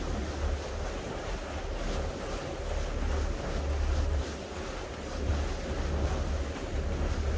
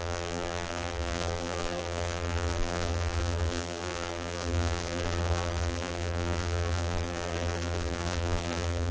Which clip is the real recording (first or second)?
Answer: first